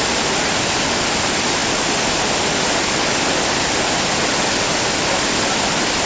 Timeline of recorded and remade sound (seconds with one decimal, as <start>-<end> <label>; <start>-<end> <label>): 0.0-6.1 recorded